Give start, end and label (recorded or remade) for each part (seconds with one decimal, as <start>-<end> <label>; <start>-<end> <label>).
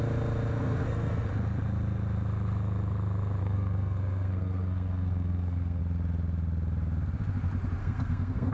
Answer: 0.0-0.6 recorded; 0.6-1.3 remade; 1.3-3.4 recorded; 3.4-5.8 remade; 5.8-7.8 recorded; 7.8-8.5 remade